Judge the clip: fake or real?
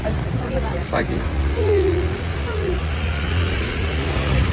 fake